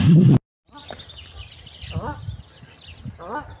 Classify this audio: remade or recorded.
recorded